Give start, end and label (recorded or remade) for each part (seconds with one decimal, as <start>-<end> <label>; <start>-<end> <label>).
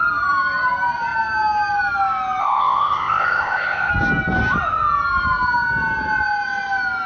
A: 0.0-2.4 recorded; 2.4-3.9 remade; 3.9-7.1 recorded